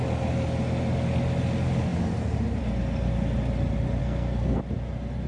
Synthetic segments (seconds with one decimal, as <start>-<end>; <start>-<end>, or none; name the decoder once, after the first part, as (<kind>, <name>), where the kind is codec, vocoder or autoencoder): 4.0-4.6 (codec, SNAC)